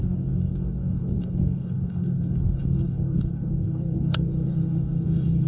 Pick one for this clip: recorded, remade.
remade